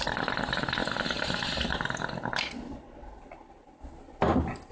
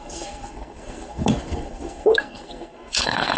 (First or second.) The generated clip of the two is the second